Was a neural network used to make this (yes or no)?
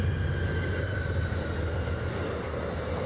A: no